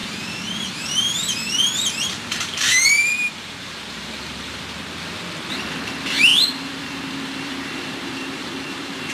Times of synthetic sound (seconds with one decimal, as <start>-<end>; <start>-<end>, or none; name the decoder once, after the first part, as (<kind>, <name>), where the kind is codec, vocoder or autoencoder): 0.0-4.6 (vocoder, BigVGAN v2); 6.3-9.1